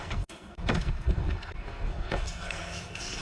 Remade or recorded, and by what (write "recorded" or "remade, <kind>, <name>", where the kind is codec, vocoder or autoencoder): remade, codec, SNAC